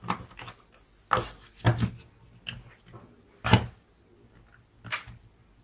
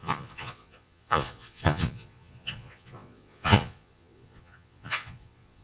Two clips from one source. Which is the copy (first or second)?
second